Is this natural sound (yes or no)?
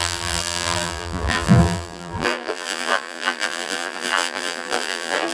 no